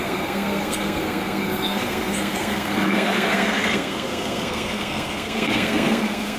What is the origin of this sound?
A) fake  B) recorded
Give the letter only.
A